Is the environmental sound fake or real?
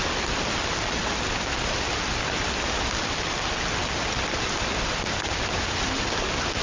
real